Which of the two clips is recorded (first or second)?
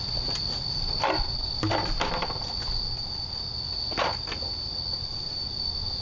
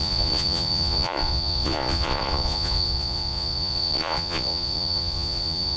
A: first